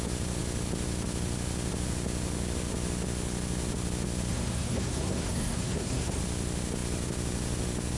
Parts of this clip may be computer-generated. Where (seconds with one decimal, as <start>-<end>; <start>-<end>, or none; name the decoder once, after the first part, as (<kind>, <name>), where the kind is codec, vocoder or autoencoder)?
4.3-6.2 (codec, SNAC)